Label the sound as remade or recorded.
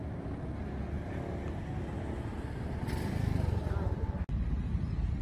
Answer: recorded